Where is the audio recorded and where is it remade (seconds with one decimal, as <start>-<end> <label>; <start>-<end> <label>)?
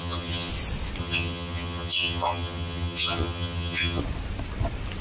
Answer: 0.0-0.5 remade; 0.5-1.0 recorded; 1.0-4.0 remade; 4.0-5.0 recorded